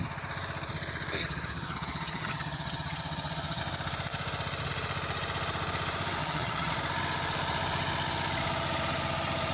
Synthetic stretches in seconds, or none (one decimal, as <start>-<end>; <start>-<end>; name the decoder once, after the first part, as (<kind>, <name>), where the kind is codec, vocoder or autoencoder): 1.2-3.6 (vocoder, HiFi-GAN); 6.2-6.7